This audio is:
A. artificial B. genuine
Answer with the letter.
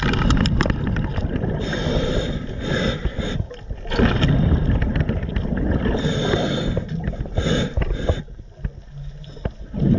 B